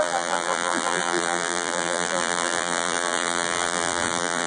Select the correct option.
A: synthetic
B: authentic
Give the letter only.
A